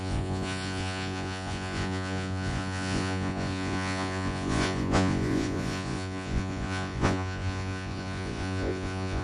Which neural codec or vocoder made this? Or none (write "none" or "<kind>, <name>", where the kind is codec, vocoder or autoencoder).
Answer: vocoder, Vocos